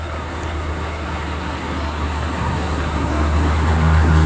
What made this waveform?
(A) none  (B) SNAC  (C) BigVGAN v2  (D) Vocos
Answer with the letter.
B